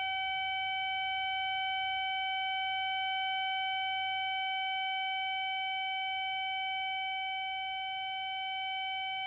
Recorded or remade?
recorded